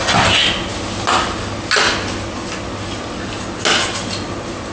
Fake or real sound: real